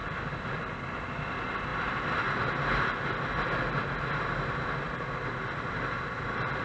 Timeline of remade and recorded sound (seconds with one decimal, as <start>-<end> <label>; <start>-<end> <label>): 0.0-6.6 recorded